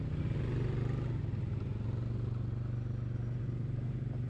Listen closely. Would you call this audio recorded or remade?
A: recorded